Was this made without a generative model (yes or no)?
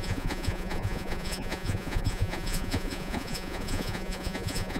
no